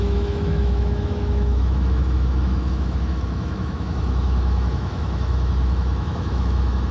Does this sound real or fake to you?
fake